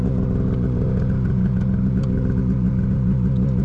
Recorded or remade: recorded